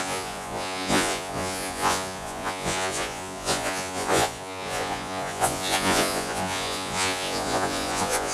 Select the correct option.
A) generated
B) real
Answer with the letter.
A